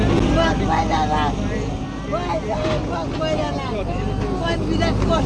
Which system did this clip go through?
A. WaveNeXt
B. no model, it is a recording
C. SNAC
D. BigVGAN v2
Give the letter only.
B